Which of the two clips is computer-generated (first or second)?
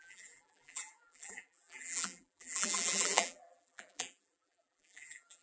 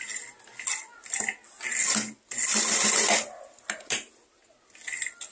first